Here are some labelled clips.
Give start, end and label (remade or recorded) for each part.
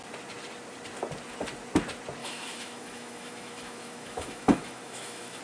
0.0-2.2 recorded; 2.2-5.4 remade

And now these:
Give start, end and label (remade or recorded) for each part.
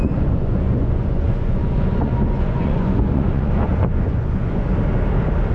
0.0-4.7 remade; 4.7-5.5 recorded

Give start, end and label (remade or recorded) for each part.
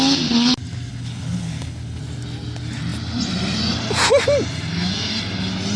0.0-0.9 recorded; 0.9-2.0 remade; 2.0-5.8 recorded